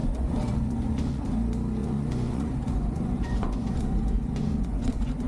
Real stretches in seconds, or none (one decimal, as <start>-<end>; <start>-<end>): 1.2-1.8